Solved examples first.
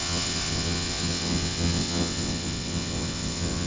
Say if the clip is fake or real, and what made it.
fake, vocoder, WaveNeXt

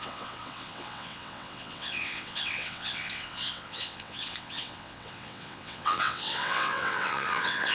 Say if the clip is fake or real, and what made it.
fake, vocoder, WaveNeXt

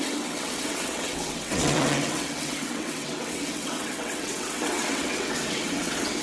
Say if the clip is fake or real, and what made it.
fake, vocoder, WaveNeXt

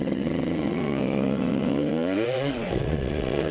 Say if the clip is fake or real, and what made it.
fake, vocoder, WaveNeXt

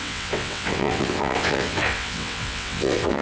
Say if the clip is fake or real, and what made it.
fake, vocoder, WaveNeXt